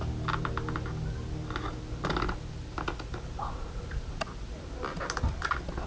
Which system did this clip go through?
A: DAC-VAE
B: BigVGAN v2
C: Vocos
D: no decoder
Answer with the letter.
D